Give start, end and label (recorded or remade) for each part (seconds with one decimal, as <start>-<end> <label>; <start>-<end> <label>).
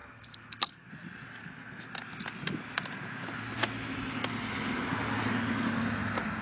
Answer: 0.0-0.9 remade; 0.9-1.4 recorded; 1.4-1.9 remade; 1.9-6.4 recorded